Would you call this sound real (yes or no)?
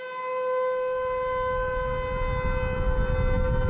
yes